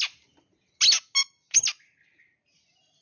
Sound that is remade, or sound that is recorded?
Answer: recorded